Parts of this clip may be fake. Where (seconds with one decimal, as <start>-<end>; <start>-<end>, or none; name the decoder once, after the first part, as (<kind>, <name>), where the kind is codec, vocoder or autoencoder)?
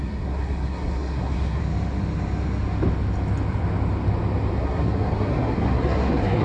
0.0-1.6 (codec, SNAC); 4.6-6.4